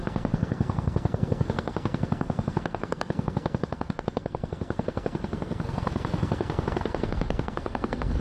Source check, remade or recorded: remade